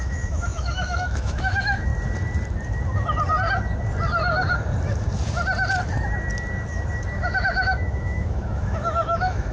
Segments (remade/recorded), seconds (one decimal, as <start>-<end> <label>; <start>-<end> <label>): 0.0-1.9 remade; 1.9-7.1 recorded; 7.1-9.5 remade